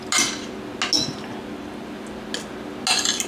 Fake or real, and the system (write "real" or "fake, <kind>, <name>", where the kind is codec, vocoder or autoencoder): real